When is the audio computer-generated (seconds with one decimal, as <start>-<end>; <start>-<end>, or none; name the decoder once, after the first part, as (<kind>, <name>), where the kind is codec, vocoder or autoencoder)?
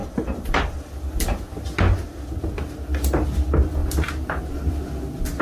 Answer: 0.0-1.5 (vocoder, BigVGAN v2); 3.8-4.4